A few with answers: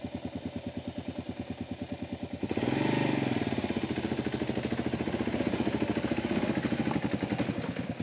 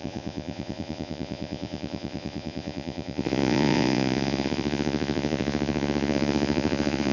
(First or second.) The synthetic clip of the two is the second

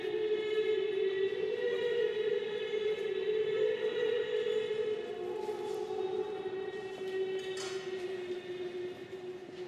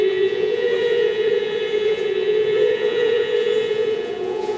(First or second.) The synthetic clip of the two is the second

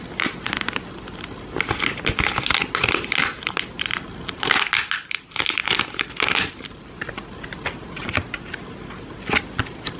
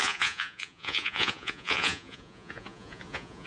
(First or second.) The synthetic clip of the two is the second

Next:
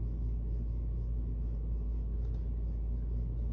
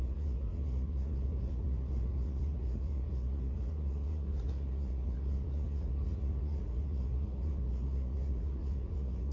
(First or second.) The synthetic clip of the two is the second